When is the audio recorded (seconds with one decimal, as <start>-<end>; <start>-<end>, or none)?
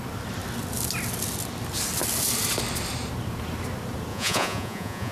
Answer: 0.0-4.1